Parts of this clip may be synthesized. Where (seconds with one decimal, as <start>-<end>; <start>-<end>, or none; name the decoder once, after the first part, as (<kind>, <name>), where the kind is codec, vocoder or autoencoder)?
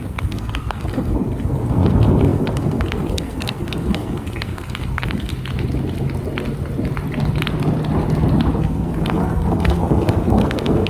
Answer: 0.0-5.3 (codec, SNAC); 8.6-10.9